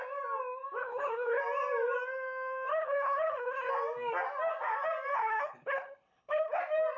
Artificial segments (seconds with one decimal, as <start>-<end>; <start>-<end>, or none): 0.8-1.4; 2.7-3.7; 5.1-6.6